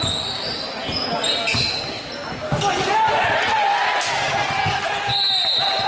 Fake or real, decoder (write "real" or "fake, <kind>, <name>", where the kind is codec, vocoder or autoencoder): real